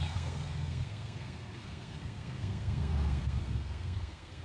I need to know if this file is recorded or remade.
remade